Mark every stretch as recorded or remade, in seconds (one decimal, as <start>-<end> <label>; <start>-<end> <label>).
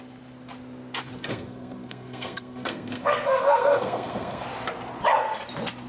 0.0-1.3 recorded; 1.3-4.4 remade; 4.4-5.9 recorded